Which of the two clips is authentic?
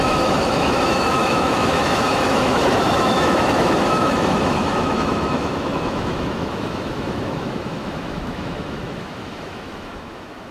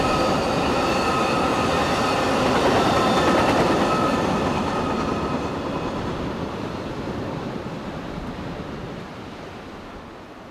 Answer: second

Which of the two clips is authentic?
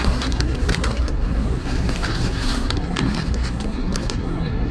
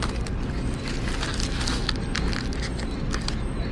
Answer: second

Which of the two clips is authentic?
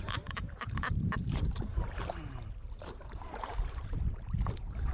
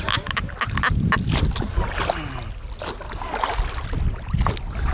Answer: second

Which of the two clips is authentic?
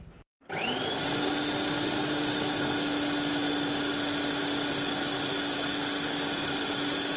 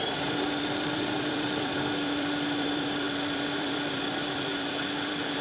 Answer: first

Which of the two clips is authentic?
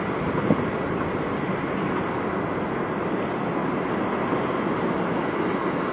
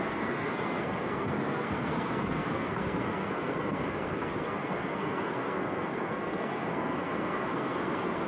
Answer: first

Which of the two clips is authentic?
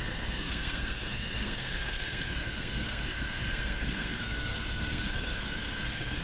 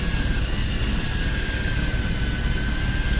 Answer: second